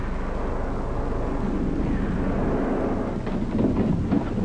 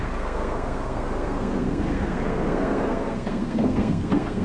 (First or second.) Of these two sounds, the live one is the first